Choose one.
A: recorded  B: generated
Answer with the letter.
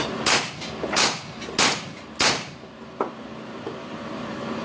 A